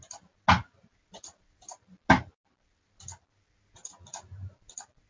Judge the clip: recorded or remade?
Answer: recorded